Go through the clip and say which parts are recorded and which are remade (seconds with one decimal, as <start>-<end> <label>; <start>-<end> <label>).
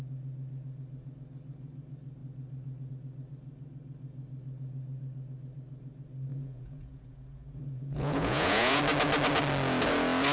0.0-6.3 recorded; 6.3-8.8 remade; 8.8-10.3 recorded